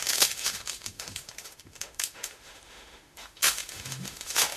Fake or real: fake